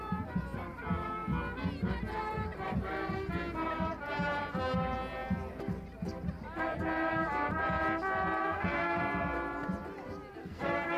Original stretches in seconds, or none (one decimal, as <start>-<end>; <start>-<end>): 0.0-8.4; 9.0-10.4